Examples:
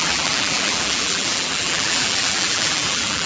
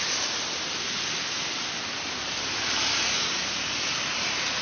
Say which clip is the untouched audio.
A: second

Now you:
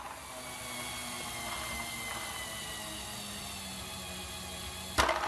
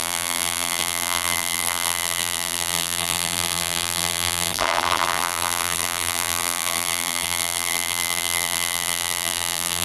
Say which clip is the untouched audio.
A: first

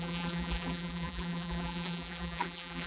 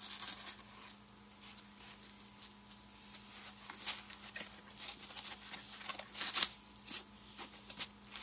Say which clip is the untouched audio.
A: second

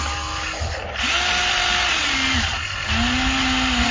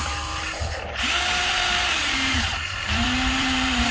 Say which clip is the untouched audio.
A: first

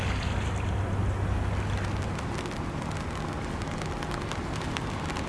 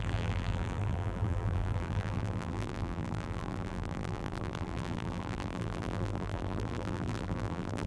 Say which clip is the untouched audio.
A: first